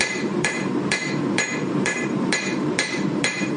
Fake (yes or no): yes